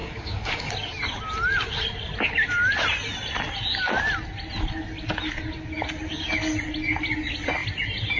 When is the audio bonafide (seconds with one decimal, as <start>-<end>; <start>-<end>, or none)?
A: 0.7-8.2